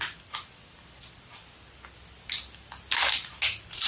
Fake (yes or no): no